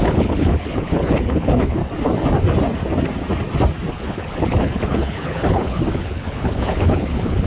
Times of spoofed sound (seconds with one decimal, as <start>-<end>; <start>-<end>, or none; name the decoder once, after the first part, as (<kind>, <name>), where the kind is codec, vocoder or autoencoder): 0.0-1.8 (codec, HILCodec); 3.9-7.5